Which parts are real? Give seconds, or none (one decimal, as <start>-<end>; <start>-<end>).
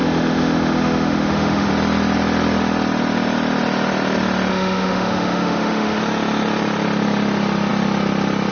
1.7-4.5; 6.0-8.5